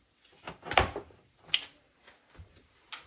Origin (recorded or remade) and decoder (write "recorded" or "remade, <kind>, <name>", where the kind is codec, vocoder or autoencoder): recorded